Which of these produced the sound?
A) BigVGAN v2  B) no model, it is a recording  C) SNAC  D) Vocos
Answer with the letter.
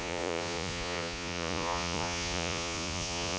D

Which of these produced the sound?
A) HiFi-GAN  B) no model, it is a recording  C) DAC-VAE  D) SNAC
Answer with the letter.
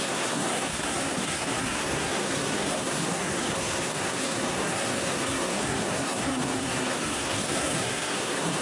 D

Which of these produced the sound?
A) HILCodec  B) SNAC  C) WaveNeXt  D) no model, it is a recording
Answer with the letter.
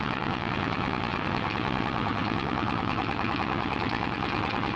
C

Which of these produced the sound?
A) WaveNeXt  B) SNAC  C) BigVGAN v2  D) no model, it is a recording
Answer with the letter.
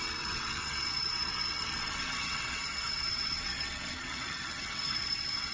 A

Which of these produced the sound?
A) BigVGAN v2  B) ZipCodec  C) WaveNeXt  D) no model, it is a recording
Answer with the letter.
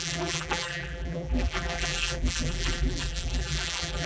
A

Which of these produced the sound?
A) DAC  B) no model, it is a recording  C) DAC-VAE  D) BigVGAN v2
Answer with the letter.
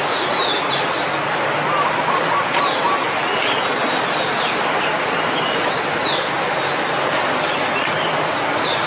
B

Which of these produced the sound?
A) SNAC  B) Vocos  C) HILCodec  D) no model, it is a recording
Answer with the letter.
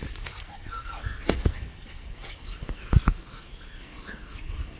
A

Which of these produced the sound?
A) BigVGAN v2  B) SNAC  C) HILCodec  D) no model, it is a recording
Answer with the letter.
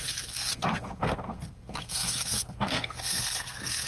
B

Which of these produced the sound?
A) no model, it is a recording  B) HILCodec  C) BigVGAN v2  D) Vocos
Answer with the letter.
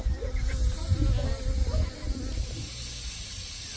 A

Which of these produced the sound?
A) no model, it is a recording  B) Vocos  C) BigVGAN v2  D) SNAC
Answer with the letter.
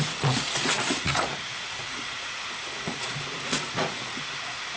B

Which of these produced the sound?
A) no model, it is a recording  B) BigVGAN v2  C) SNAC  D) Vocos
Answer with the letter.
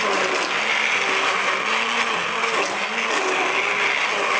A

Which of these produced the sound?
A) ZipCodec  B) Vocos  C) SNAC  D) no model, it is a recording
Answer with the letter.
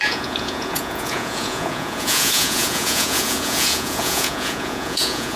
B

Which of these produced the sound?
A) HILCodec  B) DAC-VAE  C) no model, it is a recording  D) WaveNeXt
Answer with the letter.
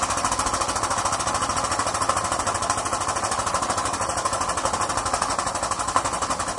C